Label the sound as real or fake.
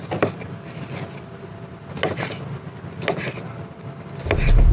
real